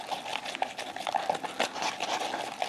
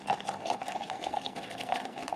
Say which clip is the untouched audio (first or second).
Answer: first